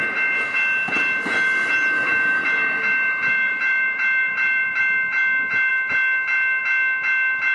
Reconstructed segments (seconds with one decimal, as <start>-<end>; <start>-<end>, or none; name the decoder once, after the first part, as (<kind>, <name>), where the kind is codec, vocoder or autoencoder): 3.2-4.8 (vocoder, BigVGAN v2)